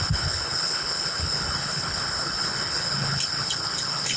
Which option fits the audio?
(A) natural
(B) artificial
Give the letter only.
B